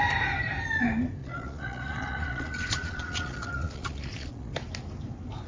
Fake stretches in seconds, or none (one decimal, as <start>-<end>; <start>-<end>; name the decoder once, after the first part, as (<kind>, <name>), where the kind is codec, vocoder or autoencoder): 1.2-4.5 (vocoder, Vocos)